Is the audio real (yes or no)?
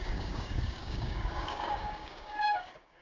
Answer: no